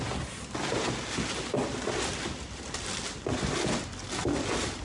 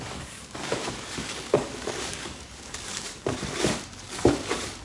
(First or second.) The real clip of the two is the first